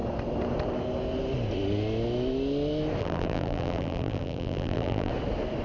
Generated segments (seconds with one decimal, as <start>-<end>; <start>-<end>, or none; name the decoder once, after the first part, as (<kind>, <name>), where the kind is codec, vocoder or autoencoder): 3.0-5.1 (vocoder, BigVGAN v2)